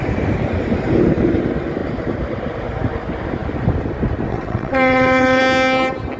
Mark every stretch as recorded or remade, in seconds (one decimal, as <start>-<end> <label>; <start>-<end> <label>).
0.0-4.3 recorded; 4.3-5.4 remade; 5.4-6.2 recorded